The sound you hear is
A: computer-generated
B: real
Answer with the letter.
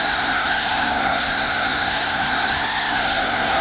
A